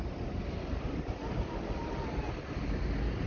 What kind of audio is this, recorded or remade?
recorded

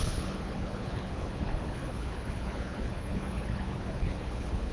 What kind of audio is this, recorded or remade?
remade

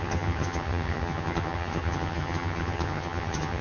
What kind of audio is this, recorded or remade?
remade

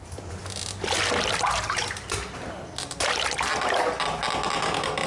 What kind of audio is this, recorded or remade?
recorded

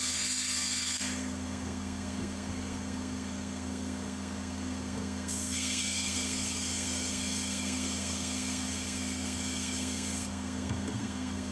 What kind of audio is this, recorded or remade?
remade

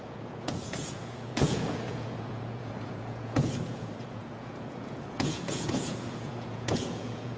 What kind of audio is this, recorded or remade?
remade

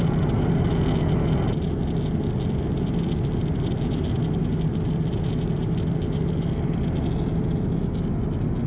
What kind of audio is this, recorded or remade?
recorded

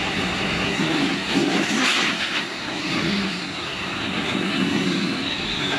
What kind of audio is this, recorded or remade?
remade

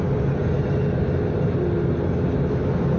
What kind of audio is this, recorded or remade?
recorded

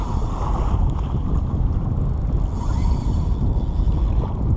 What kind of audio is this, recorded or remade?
recorded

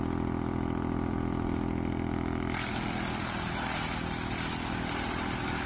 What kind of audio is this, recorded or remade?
remade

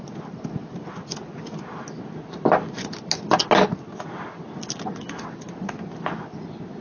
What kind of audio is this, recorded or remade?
recorded